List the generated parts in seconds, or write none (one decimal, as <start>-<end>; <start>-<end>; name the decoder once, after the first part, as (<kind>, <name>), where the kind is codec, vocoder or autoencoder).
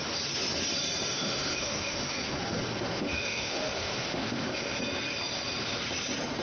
1.1-2.0 (autoencoder, DAC-VAE); 2.9-4.8